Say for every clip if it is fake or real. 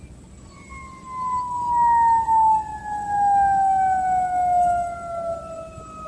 real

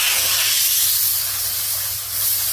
real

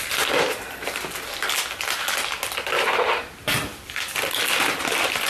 real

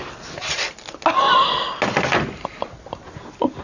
real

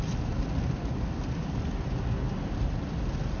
real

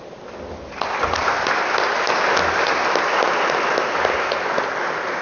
real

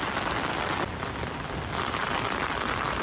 real